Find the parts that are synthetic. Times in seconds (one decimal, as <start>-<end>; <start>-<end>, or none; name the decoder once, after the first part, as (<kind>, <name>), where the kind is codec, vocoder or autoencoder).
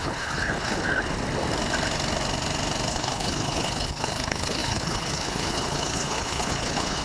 0.0-0.8 (codec, HILCodec); 2.9-7.0